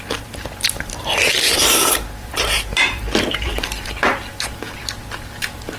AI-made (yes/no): yes